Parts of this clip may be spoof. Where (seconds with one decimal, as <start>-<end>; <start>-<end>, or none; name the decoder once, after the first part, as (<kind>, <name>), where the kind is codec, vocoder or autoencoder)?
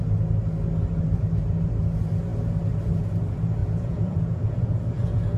3.6-5.4 (vocoder, Vocos)